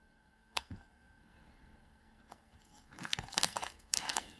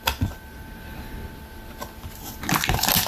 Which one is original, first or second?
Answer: second